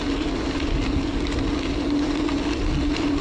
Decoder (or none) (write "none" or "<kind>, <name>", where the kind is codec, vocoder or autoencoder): none